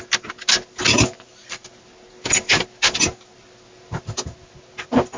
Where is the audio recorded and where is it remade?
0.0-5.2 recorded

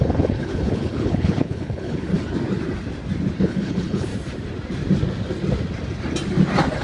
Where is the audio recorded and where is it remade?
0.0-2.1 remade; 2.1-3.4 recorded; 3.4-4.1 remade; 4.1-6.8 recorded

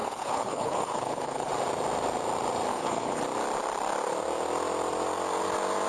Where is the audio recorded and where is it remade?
0.0-1.5 remade; 1.5-2.7 recorded; 2.7-3.2 remade; 3.2-5.9 recorded

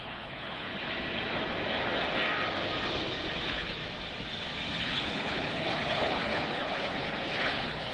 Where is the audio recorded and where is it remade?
0.0-0.7 remade; 0.7-3.4 recorded; 3.4-3.8 remade; 3.8-4.8 recorded; 4.8-7.9 remade